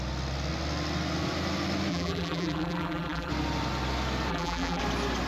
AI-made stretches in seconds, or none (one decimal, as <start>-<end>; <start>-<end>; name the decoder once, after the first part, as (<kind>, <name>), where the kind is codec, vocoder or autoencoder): 1.9-3.3 (vocoder, BigVGAN v2); 4.3-4.8